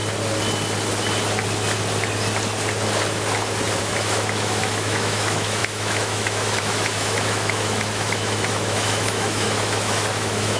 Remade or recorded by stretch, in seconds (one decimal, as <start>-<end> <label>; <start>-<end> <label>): 0.0-3.8 recorded; 3.8-10.6 remade